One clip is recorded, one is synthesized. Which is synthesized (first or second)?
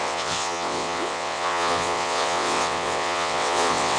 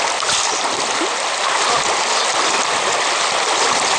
first